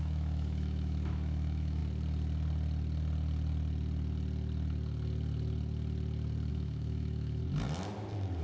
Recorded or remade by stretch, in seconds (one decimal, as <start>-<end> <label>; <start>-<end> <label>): 0.0-1.8 remade; 1.8-6.5 recorded; 6.5-7.4 remade; 7.4-8.4 recorded